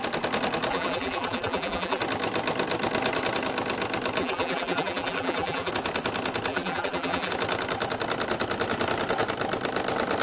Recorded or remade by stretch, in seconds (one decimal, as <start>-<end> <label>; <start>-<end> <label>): 0.0-0.7 recorded; 0.7-2.0 remade; 2.0-4.2 recorded; 4.2-5.7 remade; 5.7-6.5 recorded; 6.5-7.3 remade; 7.3-10.2 recorded

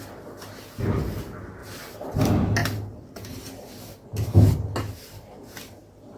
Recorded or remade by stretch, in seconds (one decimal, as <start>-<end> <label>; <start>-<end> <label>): 0.0-6.2 recorded

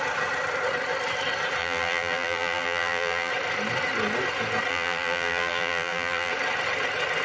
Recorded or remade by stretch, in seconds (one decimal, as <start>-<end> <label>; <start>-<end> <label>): 0.0-1.6 recorded; 1.6-3.3 remade; 3.3-4.7 recorded; 4.7-6.3 remade; 6.3-7.2 recorded

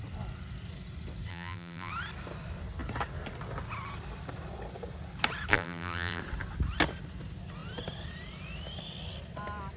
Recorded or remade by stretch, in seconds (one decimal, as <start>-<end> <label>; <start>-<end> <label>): 0.0-1.3 recorded; 1.3-1.9 remade; 1.9-5.5 recorded; 5.5-6.2 remade; 6.2-9.8 recorded

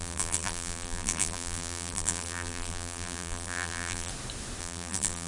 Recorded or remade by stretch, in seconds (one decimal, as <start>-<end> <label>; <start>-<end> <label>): 0.0-4.1 remade; 4.1-4.6 recorded; 4.6-5.3 remade